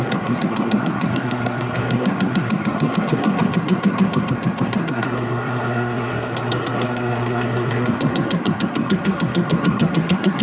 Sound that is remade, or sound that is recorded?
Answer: remade